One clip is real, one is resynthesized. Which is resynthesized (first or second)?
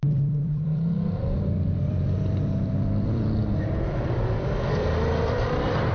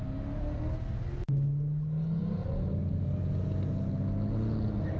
first